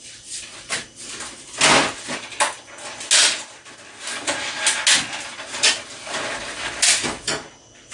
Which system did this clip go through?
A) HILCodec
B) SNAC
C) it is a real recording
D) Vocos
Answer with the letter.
C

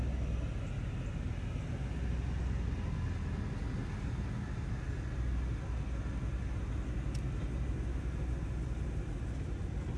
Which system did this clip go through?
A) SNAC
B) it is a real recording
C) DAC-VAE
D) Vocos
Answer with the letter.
B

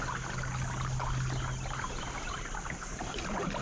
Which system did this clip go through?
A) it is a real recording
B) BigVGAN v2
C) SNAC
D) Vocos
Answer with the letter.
A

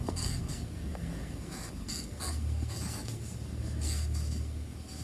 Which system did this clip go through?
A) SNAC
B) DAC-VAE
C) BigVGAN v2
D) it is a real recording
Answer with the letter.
A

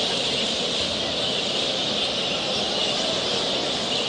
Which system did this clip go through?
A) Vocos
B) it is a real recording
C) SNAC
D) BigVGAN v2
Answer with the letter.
B